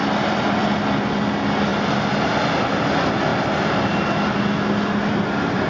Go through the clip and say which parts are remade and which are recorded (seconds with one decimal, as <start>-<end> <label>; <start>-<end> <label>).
0.0-5.7 recorded